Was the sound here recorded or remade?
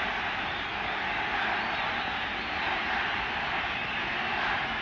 recorded